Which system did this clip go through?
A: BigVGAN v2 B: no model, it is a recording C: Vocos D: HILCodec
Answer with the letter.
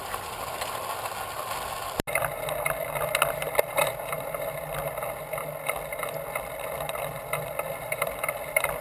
B